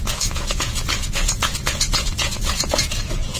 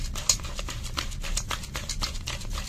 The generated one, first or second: first